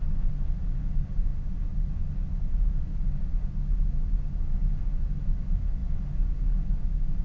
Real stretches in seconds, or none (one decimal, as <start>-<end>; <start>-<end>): 0.0-7.2